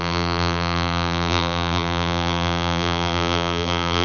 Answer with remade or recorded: remade